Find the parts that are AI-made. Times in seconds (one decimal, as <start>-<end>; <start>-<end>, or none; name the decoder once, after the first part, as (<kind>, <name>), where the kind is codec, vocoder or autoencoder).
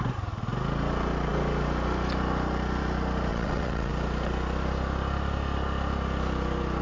3.3-3.9 (vocoder, WaveNeXt)